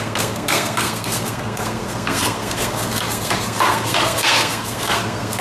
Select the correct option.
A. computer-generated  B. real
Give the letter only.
A